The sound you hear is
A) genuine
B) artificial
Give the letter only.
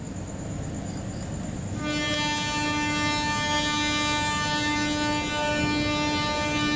A